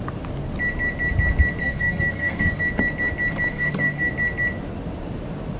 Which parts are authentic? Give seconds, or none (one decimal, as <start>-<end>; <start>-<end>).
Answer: 0.0-1.6; 2.6-3.5; 4.1-5.6

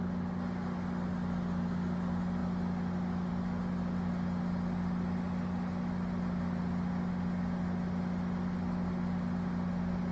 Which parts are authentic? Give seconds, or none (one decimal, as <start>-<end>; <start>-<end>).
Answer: 0.0-10.1

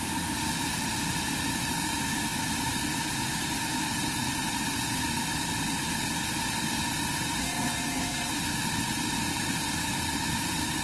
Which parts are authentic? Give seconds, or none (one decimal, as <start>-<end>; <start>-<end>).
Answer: 0.0-7.4; 8.3-10.8

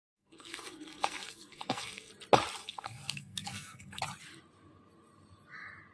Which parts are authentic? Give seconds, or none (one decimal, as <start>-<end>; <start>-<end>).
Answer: 2.1-2.6; 4.0-5.9